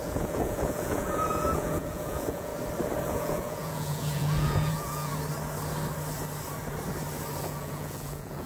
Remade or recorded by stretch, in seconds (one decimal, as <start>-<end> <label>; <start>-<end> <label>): 0.0-2.5 remade; 2.5-3.1 recorded; 3.1-5.1 remade; 5.1-7.4 recorded; 7.4-8.5 remade